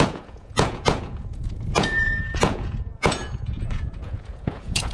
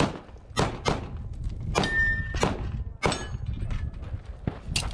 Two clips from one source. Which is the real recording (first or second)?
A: second